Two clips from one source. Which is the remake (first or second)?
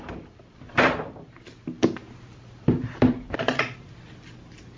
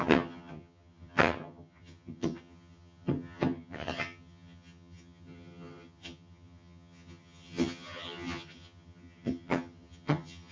second